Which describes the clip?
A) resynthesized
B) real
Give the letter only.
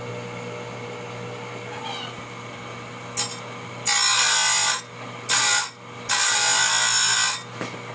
B